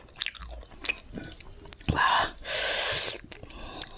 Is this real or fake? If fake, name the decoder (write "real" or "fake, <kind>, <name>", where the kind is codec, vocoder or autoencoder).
real